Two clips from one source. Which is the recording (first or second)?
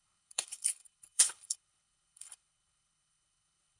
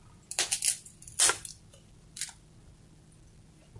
second